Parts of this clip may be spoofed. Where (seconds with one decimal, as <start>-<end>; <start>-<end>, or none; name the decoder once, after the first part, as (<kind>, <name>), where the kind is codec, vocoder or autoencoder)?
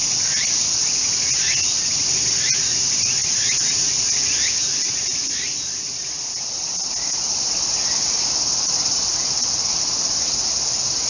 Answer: none